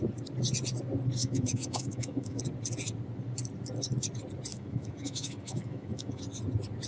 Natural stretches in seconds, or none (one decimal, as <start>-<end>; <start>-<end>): 0.0-1.2; 2.4-4.5; 6.2-6.9